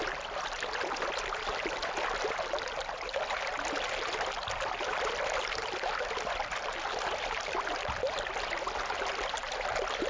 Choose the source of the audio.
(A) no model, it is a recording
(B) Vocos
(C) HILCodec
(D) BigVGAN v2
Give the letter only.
A